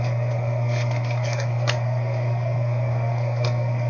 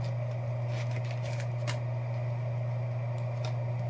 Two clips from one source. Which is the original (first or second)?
second